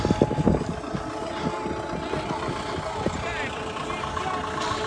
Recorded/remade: recorded